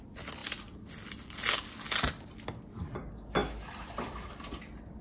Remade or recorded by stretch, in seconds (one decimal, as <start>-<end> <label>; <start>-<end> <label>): 0.0-5.0 recorded